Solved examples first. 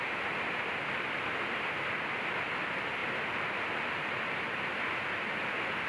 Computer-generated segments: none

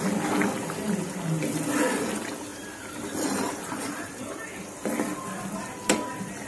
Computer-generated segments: none

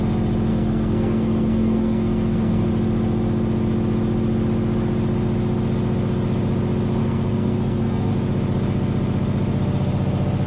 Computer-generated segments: 0.5-2.7 (codec, SNAC); 7.0-8.1